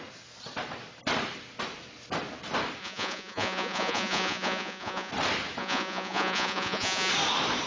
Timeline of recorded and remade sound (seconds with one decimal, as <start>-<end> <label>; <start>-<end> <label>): 0.0-2.8 recorded; 2.8-5.1 remade; 5.1-5.6 recorded; 5.6-7.1 remade; 7.1-7.7 recorded